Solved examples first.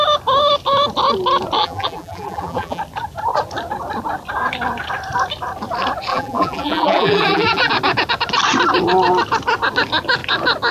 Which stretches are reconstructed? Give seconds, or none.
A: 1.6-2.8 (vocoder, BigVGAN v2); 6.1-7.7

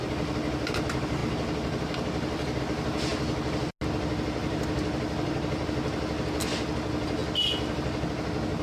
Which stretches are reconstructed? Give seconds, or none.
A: none

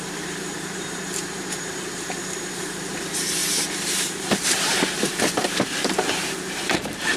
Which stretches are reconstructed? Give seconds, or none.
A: 0.0-7.2 (vocoder, BigVGAN v2)